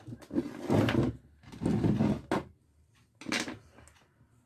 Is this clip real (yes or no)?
yes